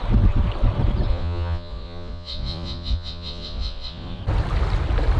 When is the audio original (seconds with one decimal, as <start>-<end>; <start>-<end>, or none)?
0.0-1.1; 4.2-5.2